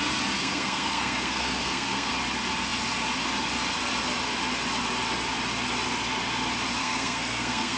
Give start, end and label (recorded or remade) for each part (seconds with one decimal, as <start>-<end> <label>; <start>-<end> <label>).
0.0-0.4 recorded; 0.4-2.1 remade; 2.1-6.8 recorded; 6.8-7.8 remade